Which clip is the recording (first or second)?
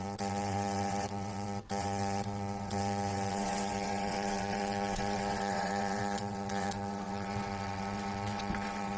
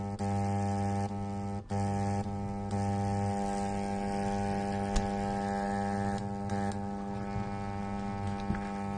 second